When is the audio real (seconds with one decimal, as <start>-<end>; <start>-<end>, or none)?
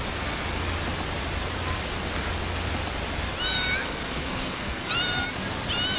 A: 0.0-3.8; 4.9-6.0